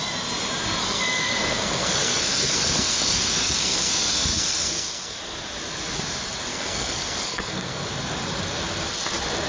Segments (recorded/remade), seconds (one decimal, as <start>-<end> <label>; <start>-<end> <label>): 0.0-0.8 recorded; 0.8-5.2 remade; 5.2-6.5 recorded; 6.5-7.8 remade; 7.8-9.5 recorded